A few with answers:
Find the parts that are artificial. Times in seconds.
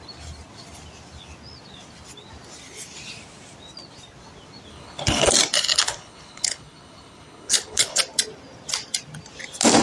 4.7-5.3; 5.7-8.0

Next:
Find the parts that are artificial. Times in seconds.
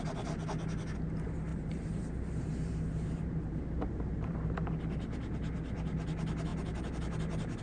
1.5-4.7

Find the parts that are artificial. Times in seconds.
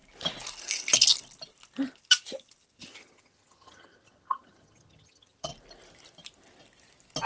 2.8-5.5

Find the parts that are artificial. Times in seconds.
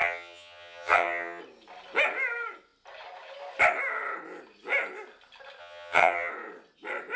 0.0-1.4; 5.6-6.3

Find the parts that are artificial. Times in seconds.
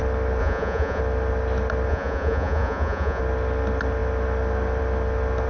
0.4-1.0; 1.9-3.2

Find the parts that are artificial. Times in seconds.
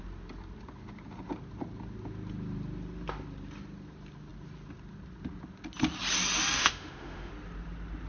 6.6-7.3